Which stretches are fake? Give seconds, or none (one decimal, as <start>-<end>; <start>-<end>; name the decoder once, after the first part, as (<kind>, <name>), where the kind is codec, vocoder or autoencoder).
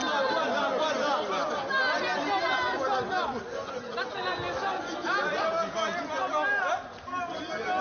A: none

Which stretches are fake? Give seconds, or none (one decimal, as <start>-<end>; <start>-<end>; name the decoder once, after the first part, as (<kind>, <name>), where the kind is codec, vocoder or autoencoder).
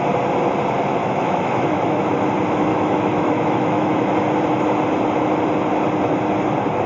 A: 1.0-2.1 (autoencoder, DAC-VAE); 2.7-4.1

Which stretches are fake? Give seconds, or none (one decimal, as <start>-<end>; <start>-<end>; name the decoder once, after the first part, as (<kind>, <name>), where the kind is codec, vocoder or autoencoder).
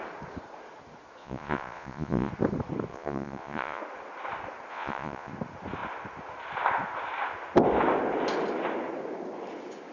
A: 1.2-2.3 (vocoder, Vocos); 2.9-3.8; 4.7-5.3